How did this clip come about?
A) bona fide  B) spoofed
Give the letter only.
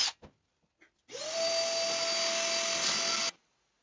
A